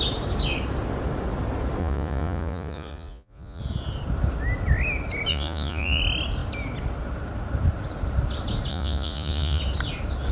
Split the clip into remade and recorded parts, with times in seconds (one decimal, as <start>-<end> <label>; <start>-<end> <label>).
0.0-1.8 recorded; 1.8-3.6 remade; 3.6-5.3 recorded; 5.3-6.0 remade; 6.0-8.7 recorded; 8.7-9.6 remade; 9.6-10.3 recorded